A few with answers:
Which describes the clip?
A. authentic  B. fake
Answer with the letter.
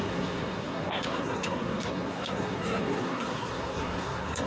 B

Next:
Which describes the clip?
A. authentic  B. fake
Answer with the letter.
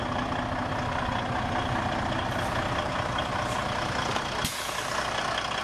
A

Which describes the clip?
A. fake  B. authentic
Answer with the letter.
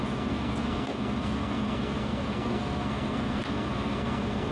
A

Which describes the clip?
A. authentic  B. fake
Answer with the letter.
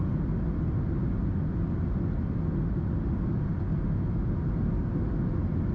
A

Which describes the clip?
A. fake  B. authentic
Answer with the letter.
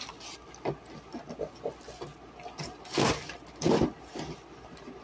B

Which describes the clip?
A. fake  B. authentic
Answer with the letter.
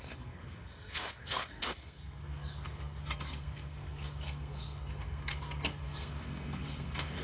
A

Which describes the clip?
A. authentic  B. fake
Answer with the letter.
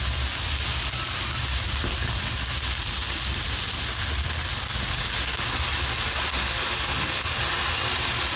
A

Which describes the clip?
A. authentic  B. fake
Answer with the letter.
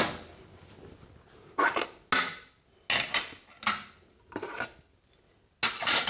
A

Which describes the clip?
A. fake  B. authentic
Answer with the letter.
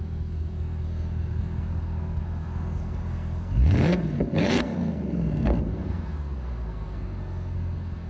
A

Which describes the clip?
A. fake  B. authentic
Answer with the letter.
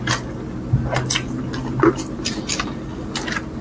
B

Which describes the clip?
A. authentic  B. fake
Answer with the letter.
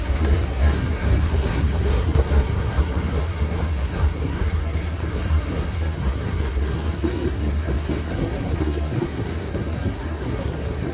B